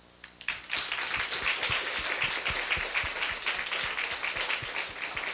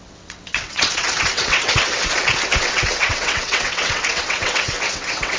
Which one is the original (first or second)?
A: first